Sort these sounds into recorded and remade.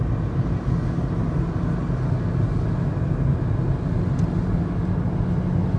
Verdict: recorded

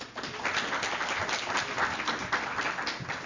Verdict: recorded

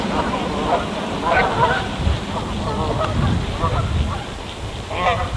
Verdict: recorded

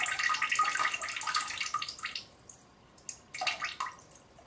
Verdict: recorded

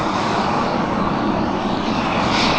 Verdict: remade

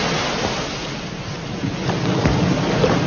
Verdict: recorded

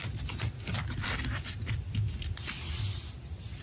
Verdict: remade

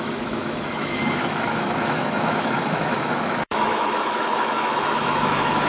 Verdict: remade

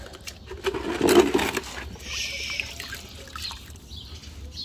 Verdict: recorded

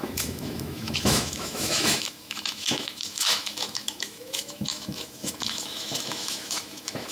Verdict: remade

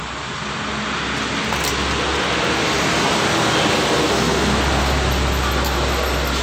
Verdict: recorded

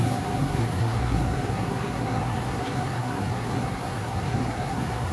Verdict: remade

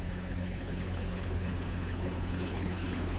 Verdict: remade